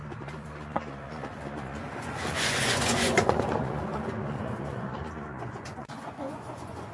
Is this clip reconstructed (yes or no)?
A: yes